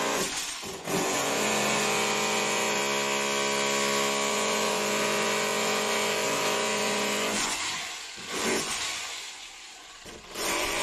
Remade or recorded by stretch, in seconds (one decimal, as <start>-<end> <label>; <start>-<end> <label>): 0.0-2.8 remade; 2.8-4.3 recorded; 4.3-10.8 remade